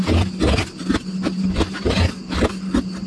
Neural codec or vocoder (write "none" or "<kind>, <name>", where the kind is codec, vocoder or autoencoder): none